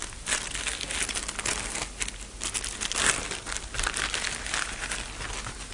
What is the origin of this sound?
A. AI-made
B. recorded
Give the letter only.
B